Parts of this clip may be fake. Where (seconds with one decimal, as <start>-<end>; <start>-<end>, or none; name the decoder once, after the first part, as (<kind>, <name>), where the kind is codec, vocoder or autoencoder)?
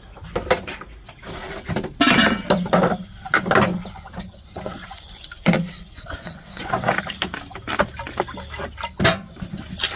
3.7-7.0 (vocoder, Vocos); 9.1-9.6